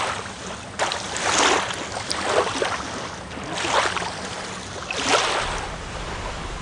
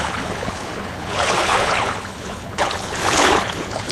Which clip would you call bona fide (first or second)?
first